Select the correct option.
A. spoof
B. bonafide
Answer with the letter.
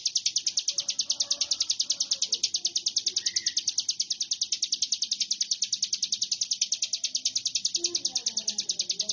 B